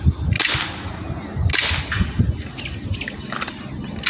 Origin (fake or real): real